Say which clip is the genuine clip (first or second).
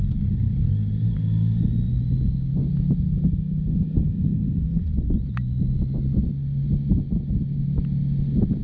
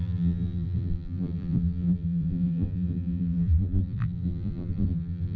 first